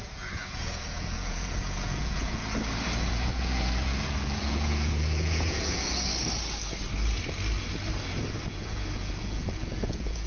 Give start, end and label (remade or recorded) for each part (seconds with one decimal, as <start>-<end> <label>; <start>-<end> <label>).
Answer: 0.0-2.4 remade; 2.4-3.1 recorded; 3.1-6.1 remade; 6.1-8.5 recorded; 8.5-10.3 remade